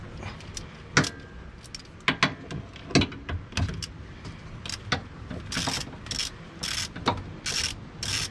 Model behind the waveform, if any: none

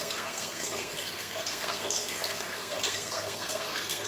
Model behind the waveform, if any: codec, SNAC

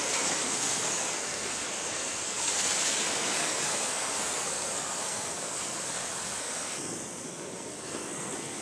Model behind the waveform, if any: codec, SNAC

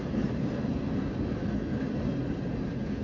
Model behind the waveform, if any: none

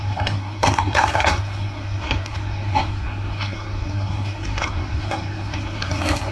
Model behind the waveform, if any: codec, SNAC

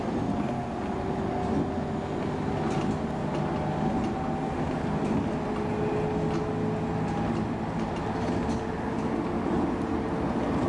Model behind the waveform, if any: none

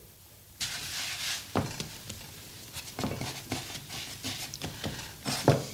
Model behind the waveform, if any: none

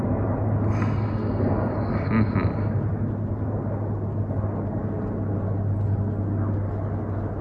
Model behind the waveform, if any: none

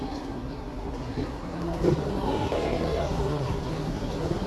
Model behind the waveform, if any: codec, SNAC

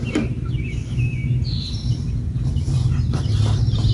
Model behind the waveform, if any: none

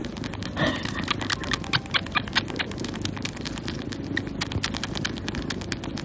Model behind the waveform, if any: none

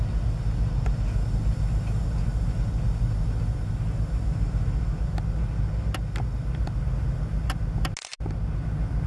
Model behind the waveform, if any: none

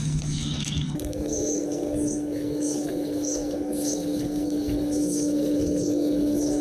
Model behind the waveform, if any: codec, SNAC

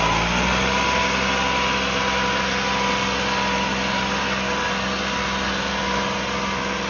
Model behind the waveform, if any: none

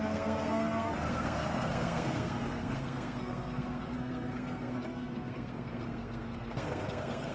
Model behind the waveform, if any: codec, SNAC